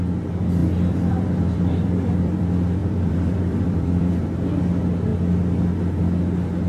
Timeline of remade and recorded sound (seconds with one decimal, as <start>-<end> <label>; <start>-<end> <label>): 0.0-0.6 recorded; 0.6-2.4 remade; 2.4-2.8 recorded; 2.8-4.2 remade; 4.2-6.7 recorded